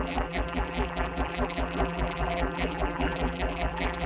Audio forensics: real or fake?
fake